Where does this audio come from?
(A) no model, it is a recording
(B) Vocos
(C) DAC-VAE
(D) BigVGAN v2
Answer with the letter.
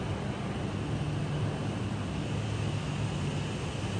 A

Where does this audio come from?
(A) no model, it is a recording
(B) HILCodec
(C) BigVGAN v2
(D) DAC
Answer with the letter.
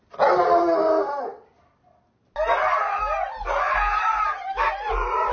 A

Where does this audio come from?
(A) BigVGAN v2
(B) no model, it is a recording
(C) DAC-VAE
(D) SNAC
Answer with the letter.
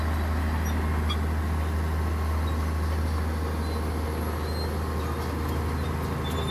B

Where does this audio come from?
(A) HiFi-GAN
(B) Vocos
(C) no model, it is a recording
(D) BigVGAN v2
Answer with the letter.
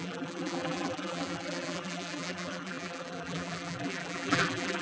D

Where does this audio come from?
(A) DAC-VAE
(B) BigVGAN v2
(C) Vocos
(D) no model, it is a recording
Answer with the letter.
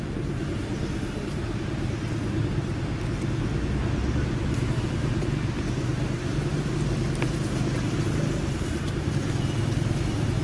D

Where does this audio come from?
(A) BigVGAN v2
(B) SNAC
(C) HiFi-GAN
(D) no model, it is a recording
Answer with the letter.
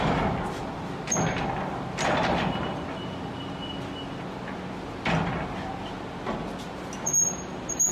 D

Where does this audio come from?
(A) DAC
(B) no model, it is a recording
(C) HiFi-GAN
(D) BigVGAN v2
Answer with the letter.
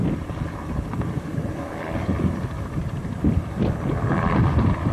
D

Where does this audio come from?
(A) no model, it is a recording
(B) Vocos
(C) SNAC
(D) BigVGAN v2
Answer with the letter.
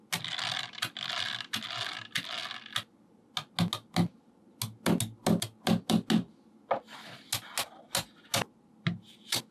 A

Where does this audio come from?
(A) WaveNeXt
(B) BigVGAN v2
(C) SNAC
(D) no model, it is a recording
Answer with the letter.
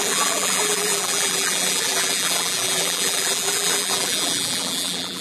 B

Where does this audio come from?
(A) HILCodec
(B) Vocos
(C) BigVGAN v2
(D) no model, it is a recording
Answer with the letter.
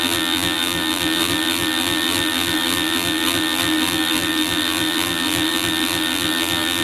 C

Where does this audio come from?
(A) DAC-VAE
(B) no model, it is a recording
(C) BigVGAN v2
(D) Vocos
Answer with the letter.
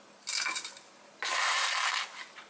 B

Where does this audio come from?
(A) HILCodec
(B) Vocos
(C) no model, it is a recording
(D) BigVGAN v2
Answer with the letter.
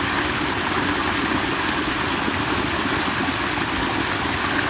C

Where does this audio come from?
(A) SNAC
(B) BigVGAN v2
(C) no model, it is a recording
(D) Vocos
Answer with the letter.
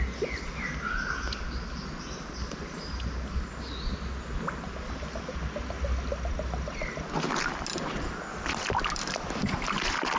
C